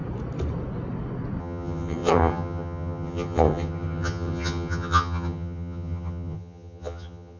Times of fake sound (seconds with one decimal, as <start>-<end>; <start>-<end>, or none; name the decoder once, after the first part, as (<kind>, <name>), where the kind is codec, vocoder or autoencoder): 1.4-7.4 (vocoder, HiFi-GAN)